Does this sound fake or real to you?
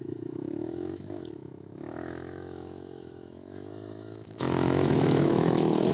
fake